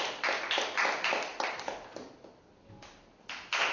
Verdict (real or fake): real